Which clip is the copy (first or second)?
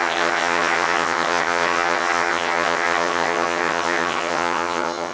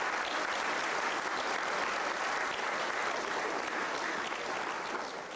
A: first